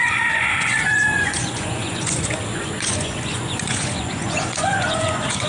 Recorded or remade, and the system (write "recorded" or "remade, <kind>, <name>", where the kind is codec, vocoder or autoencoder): remade, vocoder, Vocos